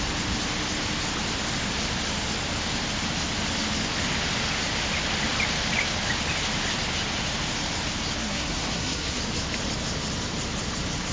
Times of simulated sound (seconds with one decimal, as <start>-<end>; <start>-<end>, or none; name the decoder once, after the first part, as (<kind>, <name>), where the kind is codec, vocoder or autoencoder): 8.2-9.2 (codec, SNAC)